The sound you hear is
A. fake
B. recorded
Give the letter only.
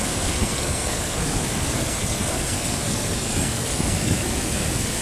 A